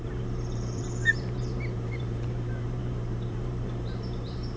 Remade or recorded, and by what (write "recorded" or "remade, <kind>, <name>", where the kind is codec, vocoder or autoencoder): remade, vocoder, BigVGAN v2